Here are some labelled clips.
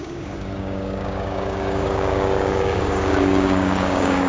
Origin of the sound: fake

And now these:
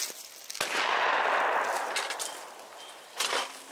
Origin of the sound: real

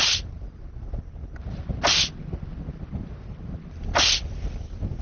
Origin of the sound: real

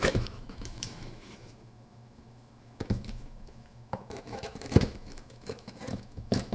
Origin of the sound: fake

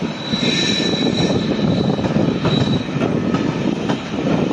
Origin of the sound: real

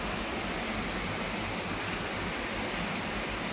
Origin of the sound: real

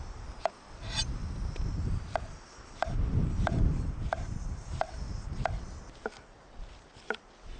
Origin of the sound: real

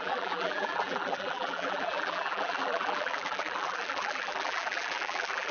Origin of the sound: fake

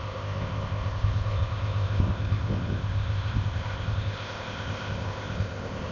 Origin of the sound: fake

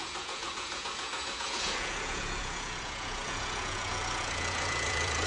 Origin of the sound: fake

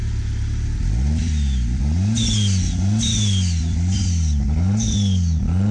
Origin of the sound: real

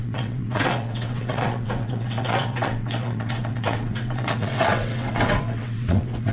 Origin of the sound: fake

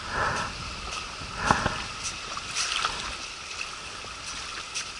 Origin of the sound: real